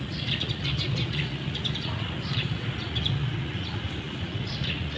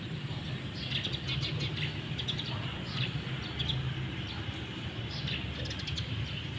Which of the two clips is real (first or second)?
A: second